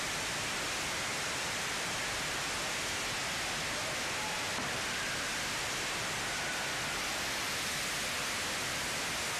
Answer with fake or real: real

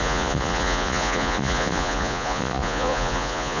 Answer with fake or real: fake